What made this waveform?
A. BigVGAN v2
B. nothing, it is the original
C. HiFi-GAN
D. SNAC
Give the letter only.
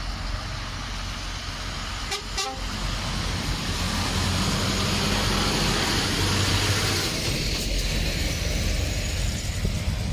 B